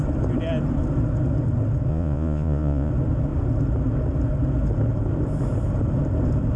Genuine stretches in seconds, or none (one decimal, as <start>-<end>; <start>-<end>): 0.0-1.9; 2.9-6.6